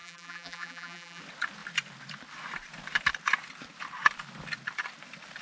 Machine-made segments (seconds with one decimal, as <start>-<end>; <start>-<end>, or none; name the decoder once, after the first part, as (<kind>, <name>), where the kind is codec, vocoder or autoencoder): 0.0-1.2 (vocoder, BigVGAN v2)

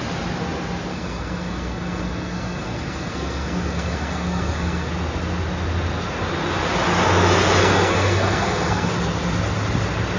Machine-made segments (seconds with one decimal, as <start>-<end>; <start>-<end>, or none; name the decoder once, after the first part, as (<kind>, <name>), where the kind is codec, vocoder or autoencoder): 0.9-4.9 (codec, SNAC); 7.6-8.9

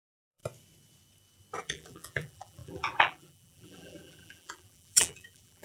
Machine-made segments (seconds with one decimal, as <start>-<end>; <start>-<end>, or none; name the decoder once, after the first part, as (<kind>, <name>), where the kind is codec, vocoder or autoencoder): 0.0-0.4 (vocoder, BigVGAN v2); 1.6-5.6

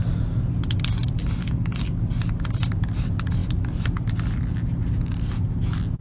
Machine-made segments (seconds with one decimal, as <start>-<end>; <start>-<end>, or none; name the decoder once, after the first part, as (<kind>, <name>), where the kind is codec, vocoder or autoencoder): 1.4-1.9 (codec, DAC)

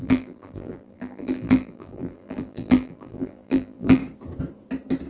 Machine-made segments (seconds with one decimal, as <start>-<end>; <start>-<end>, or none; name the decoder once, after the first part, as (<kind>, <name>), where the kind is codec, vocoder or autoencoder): 0.0-4.0 (vocoder, BigVGAN v2)

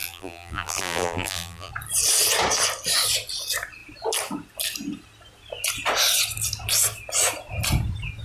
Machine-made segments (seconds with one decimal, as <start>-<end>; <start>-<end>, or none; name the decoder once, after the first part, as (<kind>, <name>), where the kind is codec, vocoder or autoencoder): 0.0-1.7 (vocoder, BigVGAN v2)

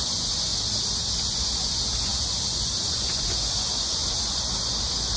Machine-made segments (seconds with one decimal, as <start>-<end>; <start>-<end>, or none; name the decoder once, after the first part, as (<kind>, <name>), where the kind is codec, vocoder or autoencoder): 0.0-0.5 (vocoder, Vocos); 1.2-5.2

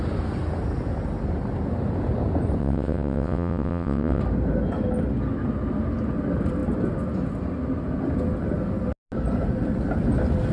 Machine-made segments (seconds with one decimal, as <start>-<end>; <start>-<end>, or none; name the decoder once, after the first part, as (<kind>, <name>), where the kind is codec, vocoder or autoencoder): 2.6-4.2 (vocoder, WaveNeXt)